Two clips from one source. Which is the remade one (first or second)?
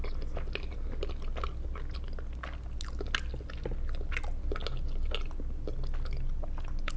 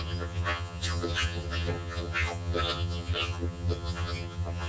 second